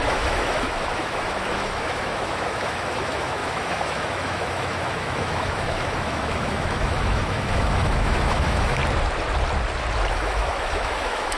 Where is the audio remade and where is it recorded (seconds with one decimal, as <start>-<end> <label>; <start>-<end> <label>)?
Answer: 0.0-8.8 remade; 8.8-10.1 recorded; 10.1-11.4 remade